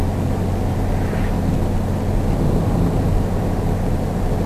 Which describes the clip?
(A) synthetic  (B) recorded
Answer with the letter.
B